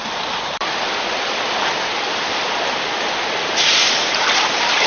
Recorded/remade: remade